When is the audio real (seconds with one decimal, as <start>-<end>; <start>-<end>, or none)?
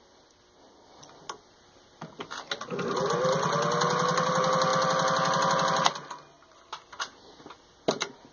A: 0.0-8.3